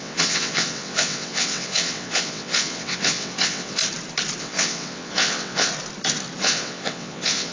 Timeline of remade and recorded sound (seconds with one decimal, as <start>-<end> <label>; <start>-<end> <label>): 0.0-3.8 remade; 3.8-4.4 recorded; 4.4-5.7 remade; 5.7-6.4 recorded; 6.4-7.5 remade